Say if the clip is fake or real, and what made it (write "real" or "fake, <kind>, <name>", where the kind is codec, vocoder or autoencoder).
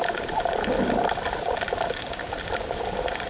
real